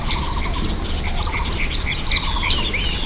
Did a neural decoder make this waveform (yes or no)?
no